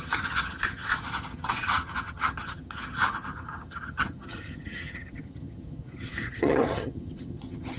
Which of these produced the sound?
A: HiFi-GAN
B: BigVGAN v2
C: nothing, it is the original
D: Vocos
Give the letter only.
A